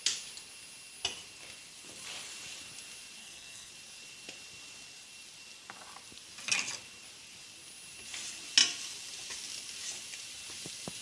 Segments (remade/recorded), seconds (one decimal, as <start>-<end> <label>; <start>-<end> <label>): 0.0-3.2 recorded; 3.2-3.7 remade; 3.7-11.0 recorded

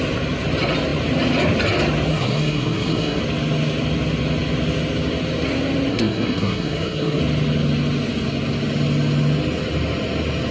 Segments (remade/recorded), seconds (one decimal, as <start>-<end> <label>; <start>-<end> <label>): 0.0-2.1 recorded; 2.1-3.2 remade; 3.2-5.9 recorded; 5.9-7.2 remade; 7.2-10.5 recorded

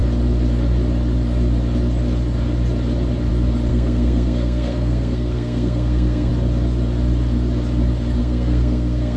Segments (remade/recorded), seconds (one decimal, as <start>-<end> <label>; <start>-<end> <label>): 0.0-3.7 recorded; 3.7-6.3 remade; 6.3-8.2 recorded; 8.2-9.2 remade

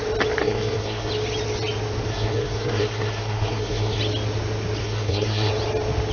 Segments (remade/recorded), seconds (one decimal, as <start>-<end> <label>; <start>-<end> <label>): 0.0-0.4 recorded; 0.4-1.1 remade; 1.1-2.1 recorded; 2.1-4.0 remade; 4.0-4.8 recorded; 4.8-5.5 remade; 5.5-6.1 recorded

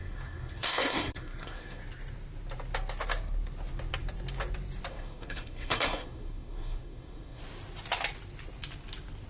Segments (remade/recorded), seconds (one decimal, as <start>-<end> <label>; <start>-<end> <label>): 0.0-1.8 remade; 1.8-4.9 recorded; 4.9-7.4 remade; 7.4-9.3 recorded

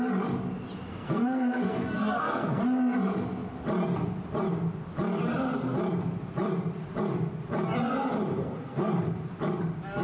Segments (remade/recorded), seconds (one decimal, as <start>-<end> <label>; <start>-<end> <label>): 0.0-0.9 recorded; 0.9-2.6 remade; 2.6-8.4 recorded; 8.4-8.9 remade; 8.9-10.0 recorded

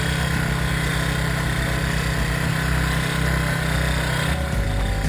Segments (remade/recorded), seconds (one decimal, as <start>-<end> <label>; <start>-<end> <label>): 0.0-5.1 recorded